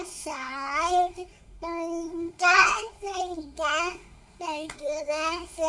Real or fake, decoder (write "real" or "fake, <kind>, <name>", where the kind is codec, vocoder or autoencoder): fake, codec, SNAC